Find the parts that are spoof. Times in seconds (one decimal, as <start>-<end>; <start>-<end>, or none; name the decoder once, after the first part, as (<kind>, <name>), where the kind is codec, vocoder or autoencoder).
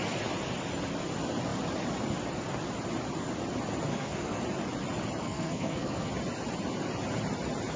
3.9-4.4 (codec, SNAC); 5.2-6.1